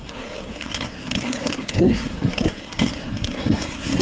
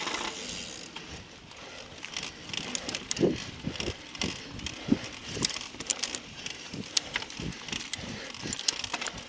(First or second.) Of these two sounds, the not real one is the first